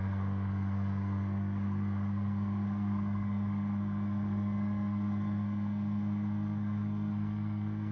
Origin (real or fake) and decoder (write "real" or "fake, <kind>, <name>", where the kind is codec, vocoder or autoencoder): fake, codec, SNAC